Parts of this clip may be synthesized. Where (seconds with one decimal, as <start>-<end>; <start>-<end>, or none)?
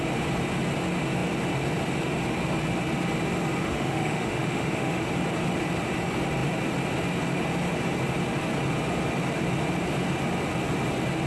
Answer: 3.6-5.1